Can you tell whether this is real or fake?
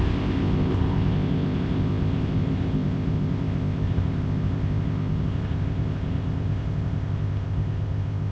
fake